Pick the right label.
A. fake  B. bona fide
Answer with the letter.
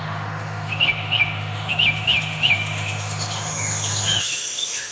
A